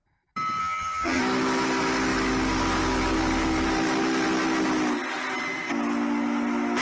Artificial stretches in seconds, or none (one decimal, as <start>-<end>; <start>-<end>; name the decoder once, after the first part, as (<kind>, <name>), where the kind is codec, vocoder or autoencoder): 0.6-1.2 (vocoder, HiFi-GAN)